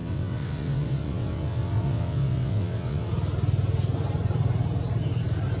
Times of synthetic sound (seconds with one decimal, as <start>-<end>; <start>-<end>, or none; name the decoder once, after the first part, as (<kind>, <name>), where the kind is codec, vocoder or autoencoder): 0.0-3.1 (vocoder, WaveNeXt)

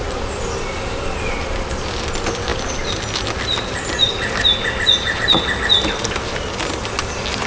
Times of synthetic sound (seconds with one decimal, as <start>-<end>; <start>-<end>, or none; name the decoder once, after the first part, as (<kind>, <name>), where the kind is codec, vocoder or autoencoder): none

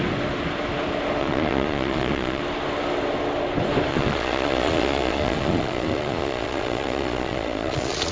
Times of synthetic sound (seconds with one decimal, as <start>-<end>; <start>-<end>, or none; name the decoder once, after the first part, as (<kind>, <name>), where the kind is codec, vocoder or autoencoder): 1.2-2.4 (vocoder, Vocos); 3.9-8.1